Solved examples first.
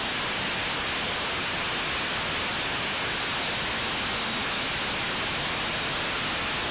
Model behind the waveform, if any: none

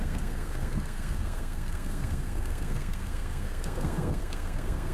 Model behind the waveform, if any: codec, SNAC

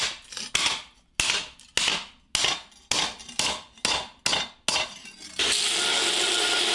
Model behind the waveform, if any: none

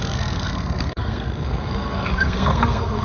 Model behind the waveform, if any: codec, SNAC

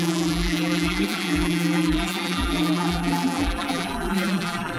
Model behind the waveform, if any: vocoder, BigVGAN v2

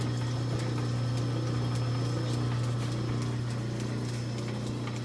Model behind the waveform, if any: none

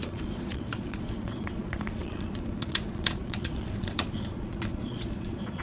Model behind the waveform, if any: vocoder, Vocos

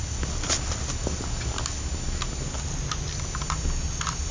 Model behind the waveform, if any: none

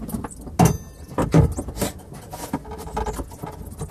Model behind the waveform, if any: none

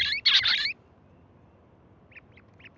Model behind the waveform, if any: none